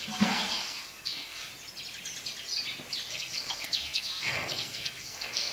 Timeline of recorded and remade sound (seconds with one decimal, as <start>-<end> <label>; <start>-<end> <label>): 0.0-1.5 remade; 1.5-3.1 recorded; 3.1-5.5 remade

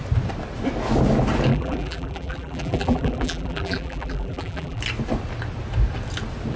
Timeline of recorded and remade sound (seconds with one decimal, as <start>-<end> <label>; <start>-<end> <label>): 0.0-1.5 recorded; 1.5-4.8 remade; 4.8-6.6 recorded

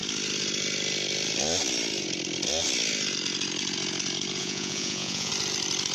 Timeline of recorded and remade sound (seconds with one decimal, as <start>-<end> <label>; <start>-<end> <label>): 0.0-4.4 recorded; 4.4-5.3 remade; 5.3-5.9 recorded

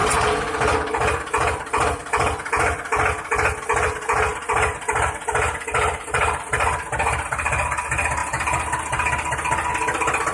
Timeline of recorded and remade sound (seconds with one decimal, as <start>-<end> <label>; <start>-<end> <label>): 0.0-10.3 recorded

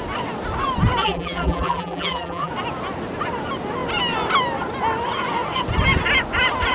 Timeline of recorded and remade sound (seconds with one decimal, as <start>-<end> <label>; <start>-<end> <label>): 0.0-1.0 recorded; 1.0-2.5 remade; 2.5-6.7 recorded

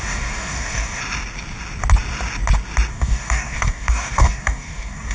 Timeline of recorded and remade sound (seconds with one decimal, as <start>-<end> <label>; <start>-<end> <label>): 0.0-1.0 remade; 1.0-2.9 recorded; 2.9-5.1 remade